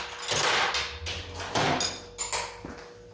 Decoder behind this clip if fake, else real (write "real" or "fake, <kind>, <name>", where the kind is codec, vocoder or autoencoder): real